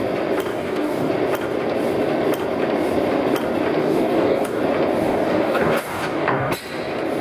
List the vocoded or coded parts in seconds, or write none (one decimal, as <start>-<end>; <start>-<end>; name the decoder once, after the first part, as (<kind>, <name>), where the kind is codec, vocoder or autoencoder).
0.5-1.1 (codec, DAC); 3.8-4.6; 5.0-6.5